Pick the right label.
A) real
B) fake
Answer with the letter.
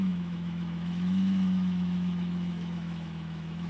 B